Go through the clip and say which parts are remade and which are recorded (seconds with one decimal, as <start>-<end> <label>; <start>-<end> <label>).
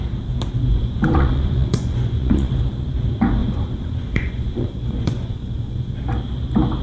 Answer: 0.0-0.7 recorded; 0.7-2.5 remade; 2.5-3.4 recorded; 3.4-5.9 remade; 5.9-6.8 recorded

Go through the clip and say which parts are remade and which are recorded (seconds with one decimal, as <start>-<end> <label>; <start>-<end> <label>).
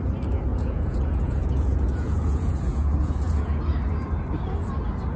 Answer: 0.0-0.5 recorded; 0.5-3.6 remade; 3.6-5.2 recorded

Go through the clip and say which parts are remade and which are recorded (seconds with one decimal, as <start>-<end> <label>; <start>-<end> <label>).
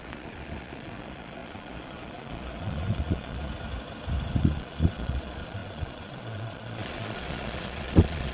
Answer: 0.0-3.5 remade; 3.5-4.4 recorded; 4.4-8.3 remade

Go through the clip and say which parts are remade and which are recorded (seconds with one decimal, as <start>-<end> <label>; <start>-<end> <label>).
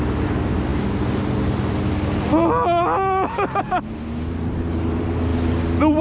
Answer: 0.0-6.0 recorded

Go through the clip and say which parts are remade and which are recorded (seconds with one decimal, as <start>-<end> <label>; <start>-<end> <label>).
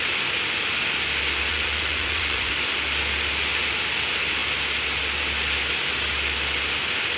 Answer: 0.0-1.5 recorded; 1.5-2.5 remade; 2.5-7.2 recorded